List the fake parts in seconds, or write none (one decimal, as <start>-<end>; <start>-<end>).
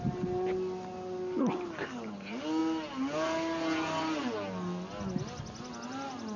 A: none